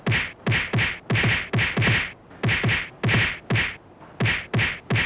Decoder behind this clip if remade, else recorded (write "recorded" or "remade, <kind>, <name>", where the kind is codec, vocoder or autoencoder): recorded